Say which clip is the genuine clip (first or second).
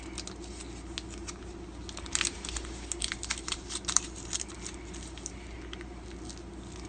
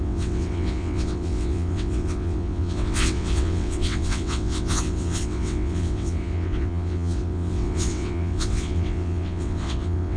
first